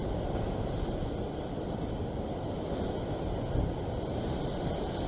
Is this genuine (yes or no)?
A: yes